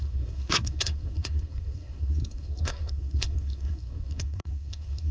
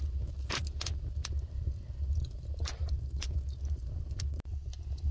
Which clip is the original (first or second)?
second